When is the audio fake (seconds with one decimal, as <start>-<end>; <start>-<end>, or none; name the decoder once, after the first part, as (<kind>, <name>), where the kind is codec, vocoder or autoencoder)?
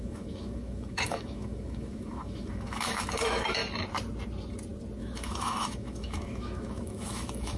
0.0-3.6 (autoencoder, DAC-VAE); 5.0-7.6